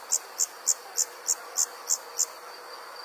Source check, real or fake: real